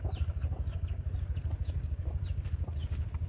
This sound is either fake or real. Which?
real